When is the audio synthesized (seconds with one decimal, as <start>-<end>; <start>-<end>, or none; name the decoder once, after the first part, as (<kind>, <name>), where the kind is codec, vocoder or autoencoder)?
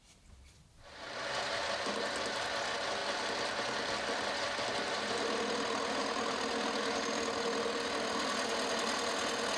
none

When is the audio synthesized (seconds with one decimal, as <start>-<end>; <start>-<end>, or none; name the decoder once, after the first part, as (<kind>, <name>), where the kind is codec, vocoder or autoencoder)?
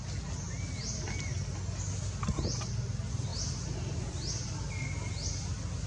none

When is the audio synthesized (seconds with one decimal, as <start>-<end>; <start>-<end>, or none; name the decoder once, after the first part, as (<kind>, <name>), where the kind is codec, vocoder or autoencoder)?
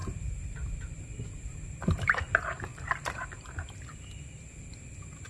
none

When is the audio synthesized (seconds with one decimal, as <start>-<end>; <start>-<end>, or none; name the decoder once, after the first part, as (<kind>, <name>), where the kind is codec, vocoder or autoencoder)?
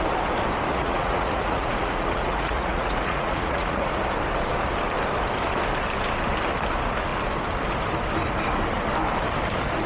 0.7-3.9 (vocoder, Vocos)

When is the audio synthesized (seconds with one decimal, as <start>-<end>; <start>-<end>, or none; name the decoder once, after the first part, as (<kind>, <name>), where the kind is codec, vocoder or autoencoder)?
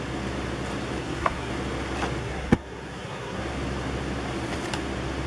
1.0-1.5 (codec, SNAC); 2.2-3.4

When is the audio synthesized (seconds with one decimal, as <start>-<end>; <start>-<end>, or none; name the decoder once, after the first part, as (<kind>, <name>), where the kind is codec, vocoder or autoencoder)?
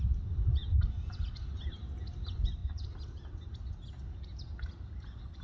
2.6-3.5 (vocoder, BigVGAN v2)